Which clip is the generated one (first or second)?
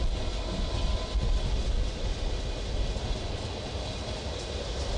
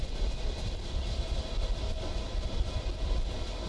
second